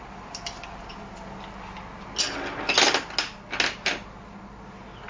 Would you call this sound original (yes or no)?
yes